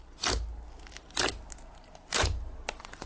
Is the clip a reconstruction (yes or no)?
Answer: no